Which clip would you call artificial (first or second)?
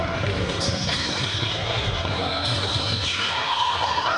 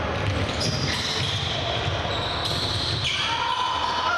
first